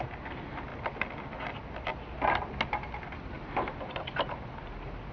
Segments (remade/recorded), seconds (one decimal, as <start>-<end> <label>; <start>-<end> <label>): 0.0-5.1 recorded